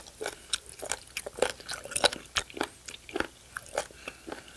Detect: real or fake real